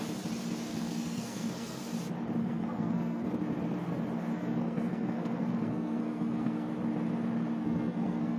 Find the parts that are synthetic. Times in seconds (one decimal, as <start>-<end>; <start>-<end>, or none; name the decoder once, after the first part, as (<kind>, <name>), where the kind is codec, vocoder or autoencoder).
0.7-1.8 (codec, SNAC); 2.4-3.3; 4.3-6.7; 7.6-8.4